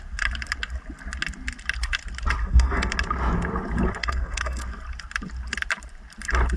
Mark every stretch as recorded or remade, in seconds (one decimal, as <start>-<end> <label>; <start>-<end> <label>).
0.0-2.4 recorded; 2.4-2.9 remade; 2.9-4.0 recorded; 4.0-4.6 remade; 4.6-6.6 recorded